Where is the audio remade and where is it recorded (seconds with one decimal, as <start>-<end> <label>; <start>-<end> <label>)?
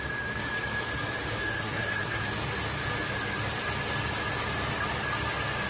0.0-1.4 recorded; 1.4-2.2 remade; 2.2-5.7 recorded